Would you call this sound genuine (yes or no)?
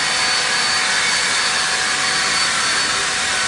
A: yes